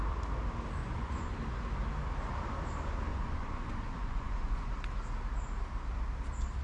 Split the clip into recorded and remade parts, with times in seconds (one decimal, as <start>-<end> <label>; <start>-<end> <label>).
0.0-0.8 recorded; 0.8-1.3 remade; 1.3-3.1 recorded; 3.1-4.7 remade; 4.7-6.6 recorded